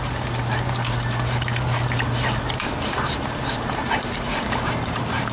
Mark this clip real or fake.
fake